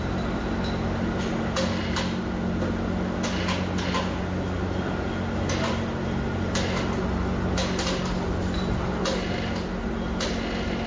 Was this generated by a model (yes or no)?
no